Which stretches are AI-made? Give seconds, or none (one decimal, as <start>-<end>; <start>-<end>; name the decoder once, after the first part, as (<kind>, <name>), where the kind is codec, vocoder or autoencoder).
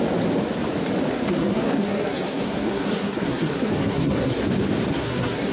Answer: 1.1-4.4 (codec, SNAC); 4.9-5.5